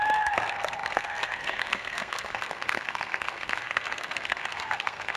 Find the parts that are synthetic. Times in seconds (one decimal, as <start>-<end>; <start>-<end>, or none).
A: 0.0-5.2